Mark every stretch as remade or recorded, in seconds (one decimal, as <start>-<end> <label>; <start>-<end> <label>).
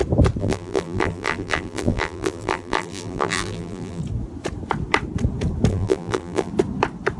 0.0-0.4 recorded; 0.4-4.0 remade; 4.0-5.7 recorded; 5.7-6.5 remade; 6.5-7.2 recorded